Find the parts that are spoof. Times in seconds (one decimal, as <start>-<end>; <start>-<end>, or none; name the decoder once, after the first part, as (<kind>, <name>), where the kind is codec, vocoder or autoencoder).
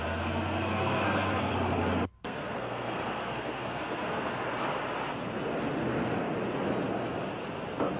0.0-1.5 (codec, SNAC); 2.2-4.3